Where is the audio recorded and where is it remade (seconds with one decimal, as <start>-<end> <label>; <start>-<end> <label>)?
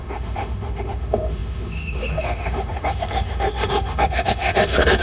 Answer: 0.0-5.0 remade